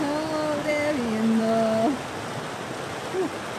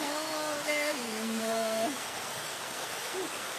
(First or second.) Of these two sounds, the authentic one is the first